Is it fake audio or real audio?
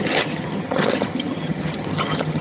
fake